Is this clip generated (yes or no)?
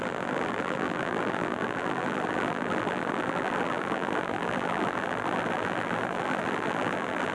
yes